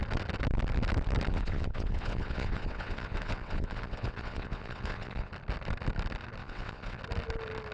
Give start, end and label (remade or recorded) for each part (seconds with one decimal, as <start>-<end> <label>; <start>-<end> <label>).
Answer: 0.0-1.3 recorded; 1.3-5.3 remade; 5.3-6.4 recorded; 6.4-7.0 remade; 7.0-7.7 recorded